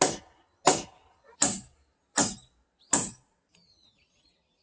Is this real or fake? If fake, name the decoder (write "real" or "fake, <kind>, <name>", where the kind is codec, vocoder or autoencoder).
real